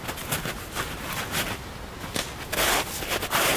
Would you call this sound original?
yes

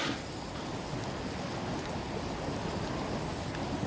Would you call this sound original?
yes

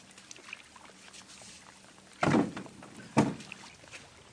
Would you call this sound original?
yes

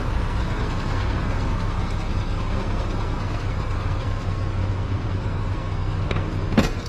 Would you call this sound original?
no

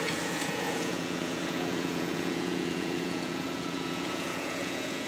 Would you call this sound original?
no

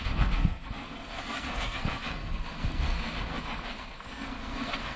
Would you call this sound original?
no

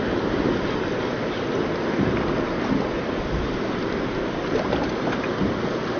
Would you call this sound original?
yes